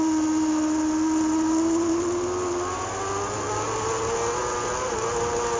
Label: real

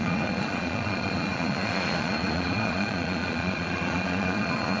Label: fake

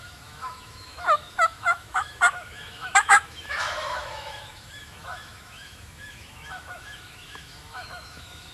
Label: fake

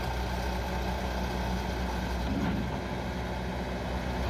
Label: real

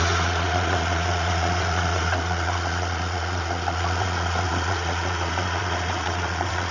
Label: fake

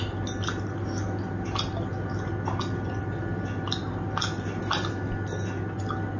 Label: real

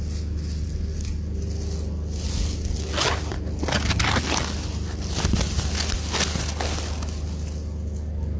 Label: real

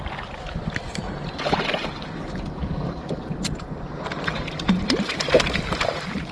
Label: fake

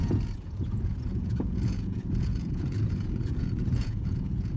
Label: fake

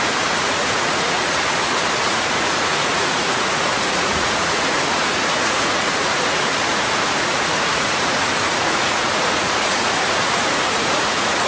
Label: fake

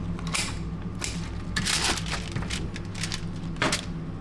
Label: real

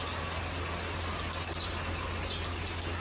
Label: real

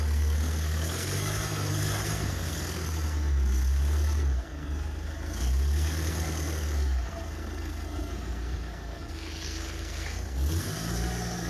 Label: fake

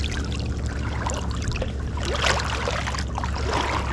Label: real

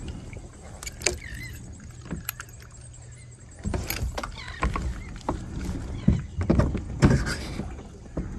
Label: real